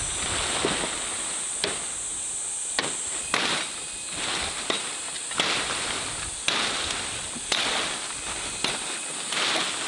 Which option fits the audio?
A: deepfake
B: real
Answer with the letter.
B